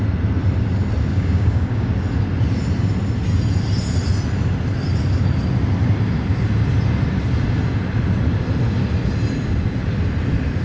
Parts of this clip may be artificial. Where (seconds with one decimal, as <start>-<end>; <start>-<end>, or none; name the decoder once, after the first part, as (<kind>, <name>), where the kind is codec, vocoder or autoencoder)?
1.1-1.9 (codec, DAC)